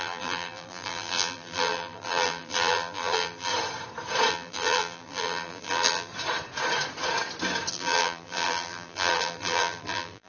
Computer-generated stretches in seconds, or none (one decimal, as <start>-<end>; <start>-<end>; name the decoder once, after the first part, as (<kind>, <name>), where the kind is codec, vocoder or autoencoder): 0.0-3.5 (vocoder, BigVGAN v2); 4.3-6.1; 7.7-10.3